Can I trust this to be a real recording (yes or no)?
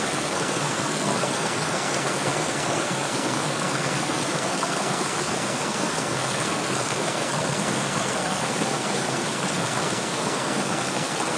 no